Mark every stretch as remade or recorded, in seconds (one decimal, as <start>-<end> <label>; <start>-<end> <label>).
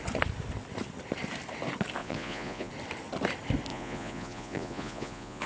0.0-2.0 recorded; 2.0-2.7 remade; 2.7-3.7 recorded; 3.7-5.5 remade